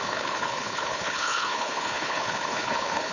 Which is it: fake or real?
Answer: fake